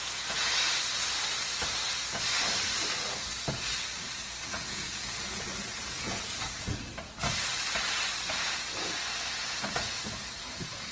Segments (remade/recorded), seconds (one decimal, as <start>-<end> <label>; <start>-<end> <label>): 0.0-0.5 remade; 0.5-4.4 recorded; 4.4-6.9 remade; 6.9-8.3 recorded; 8.3-10.9 remade